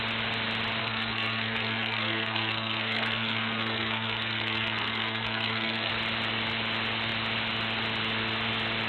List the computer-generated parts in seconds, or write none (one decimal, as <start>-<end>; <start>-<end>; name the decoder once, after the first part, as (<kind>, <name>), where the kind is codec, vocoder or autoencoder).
0.8-5.9 (codec, SNAC)